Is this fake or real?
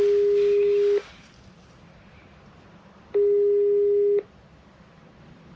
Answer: real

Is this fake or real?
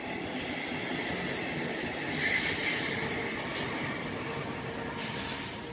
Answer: real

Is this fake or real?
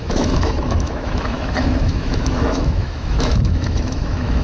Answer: fake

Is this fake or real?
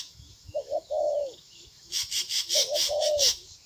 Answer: fake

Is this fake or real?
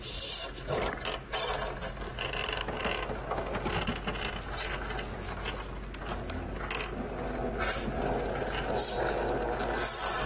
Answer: real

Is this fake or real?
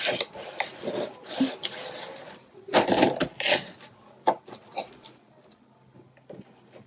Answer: real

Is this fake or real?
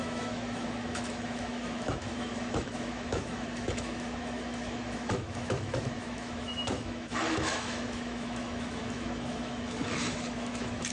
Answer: fake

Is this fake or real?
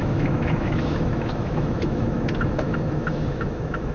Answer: fake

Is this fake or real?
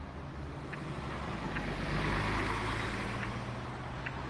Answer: real